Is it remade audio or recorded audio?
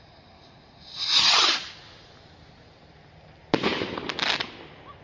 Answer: recorded